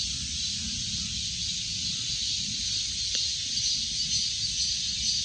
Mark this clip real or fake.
real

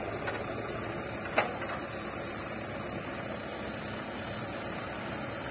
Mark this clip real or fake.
real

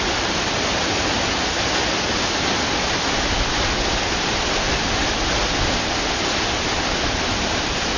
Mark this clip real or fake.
real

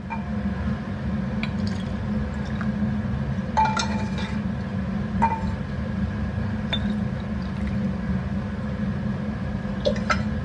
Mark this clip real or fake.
real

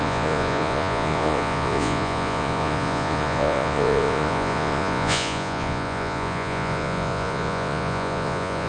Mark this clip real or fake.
fake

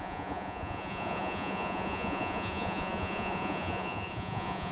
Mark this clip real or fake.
fake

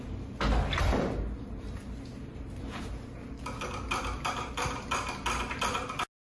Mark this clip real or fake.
real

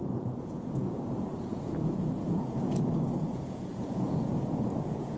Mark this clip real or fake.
fake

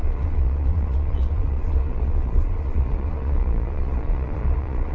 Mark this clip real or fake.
fake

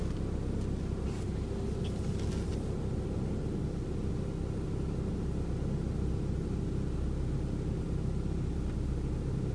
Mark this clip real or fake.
real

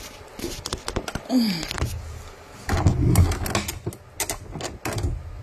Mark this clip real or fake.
real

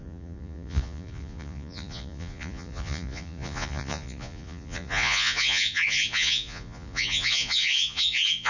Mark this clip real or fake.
fake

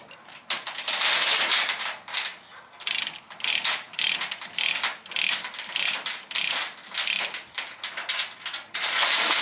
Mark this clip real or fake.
real